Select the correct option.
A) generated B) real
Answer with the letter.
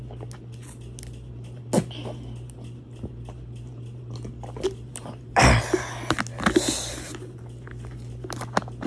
B